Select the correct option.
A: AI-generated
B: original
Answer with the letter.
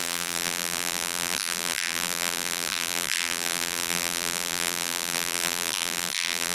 A